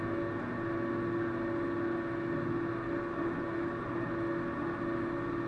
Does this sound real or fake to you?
real